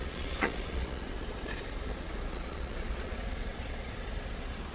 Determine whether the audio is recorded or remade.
remade